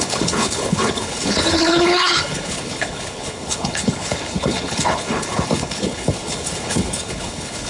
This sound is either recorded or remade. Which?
remade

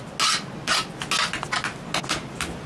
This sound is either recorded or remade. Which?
recorded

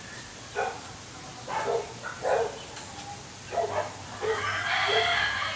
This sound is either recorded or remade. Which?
recorded